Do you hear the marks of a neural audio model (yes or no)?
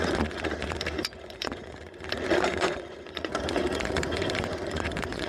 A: yes